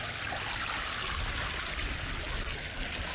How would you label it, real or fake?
real